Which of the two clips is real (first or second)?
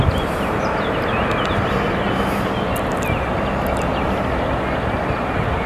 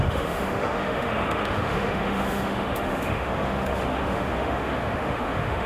first